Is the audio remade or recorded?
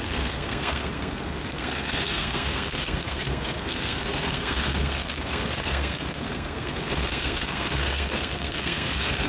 remade